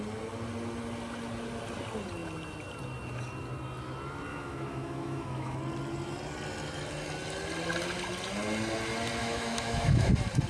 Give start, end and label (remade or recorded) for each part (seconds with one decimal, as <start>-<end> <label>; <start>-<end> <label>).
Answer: 0.0-4.3 recorded; 4.3-5.6 remade; 5.6-9.2 recorded; 9.2-10.1 remade; 10.1-10.5 recorded